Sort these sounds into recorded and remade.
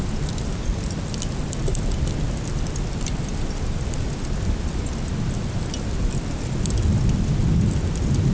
recorded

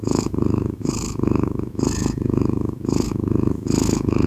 remade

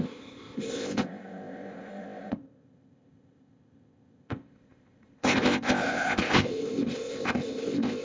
remade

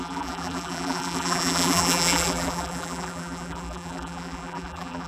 remade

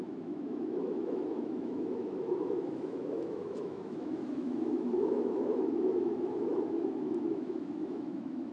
remade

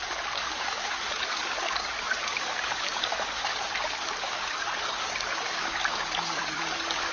remade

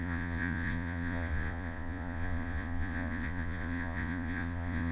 remade